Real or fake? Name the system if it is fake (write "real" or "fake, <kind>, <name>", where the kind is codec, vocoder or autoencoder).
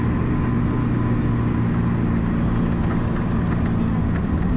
real